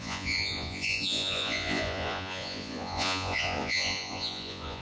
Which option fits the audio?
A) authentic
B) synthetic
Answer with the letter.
B